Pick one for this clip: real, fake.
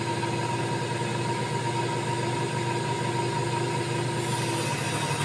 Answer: real